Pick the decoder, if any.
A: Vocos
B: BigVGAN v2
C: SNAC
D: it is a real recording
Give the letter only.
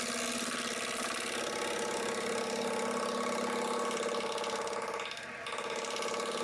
D